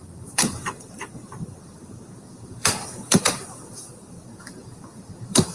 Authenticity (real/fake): fake